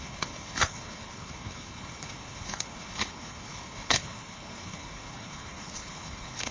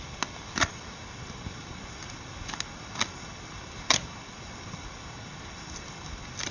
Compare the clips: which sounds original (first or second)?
second